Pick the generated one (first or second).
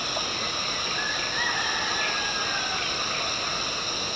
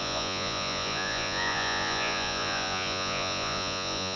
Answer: second